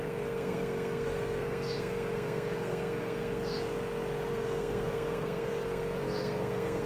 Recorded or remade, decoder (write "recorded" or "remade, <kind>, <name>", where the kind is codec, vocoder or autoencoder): remade, codec, SNAC